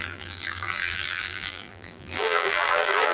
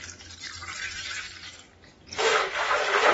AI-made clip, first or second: first